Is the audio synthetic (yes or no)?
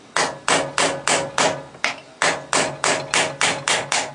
no